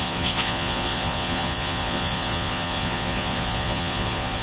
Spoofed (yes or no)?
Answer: yes